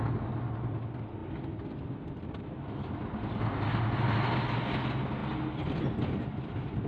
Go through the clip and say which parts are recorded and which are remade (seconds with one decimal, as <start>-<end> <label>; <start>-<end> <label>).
0.0-6.9 recorded